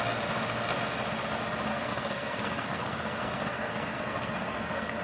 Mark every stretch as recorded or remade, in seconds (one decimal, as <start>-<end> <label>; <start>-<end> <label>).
0.0-1.7 recorded; 1.7-5.0 remade